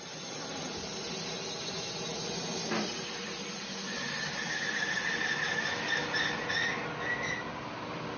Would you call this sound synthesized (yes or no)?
no